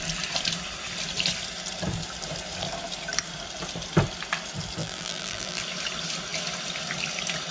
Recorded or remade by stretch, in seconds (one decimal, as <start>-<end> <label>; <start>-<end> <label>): 0.0-4.8 recorded; 4.8-5.6 remade; 5.6-7.5 recorded

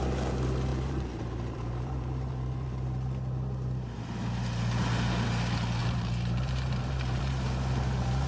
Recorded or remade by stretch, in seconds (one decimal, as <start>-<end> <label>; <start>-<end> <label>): 0.0-0.7 recorded; 0.7-2.7 remade; 2.7-5.8 recorded; 5.8-7.2 remade; 7.2-8.3 recorded

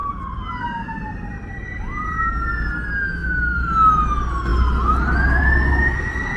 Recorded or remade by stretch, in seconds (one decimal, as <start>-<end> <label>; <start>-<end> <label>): 0.0-3.2 recorded; 3.2-3.7 remade; 3.7-6.4 recorded

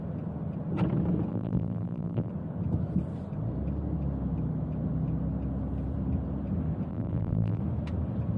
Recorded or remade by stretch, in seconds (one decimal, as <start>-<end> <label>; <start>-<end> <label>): 0.0-1.3 recorded; 1.3-2.3 remade; 2.3-6.9 recorded; 6.9-7.6 remade; 7.6-8.4 recorded

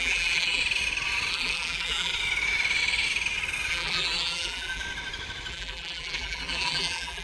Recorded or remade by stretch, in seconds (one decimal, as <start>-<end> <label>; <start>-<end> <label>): 0.0-0.6 remade; 0.6-1.3 recorded; 1.3-2.1 remade; 2.1-3.7 recorded; 3.7-4.8 remade; 4.8-5.5 recorded; 5.5-7.2 remade